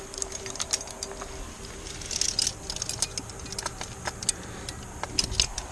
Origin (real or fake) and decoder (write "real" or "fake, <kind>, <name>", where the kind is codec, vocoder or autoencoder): real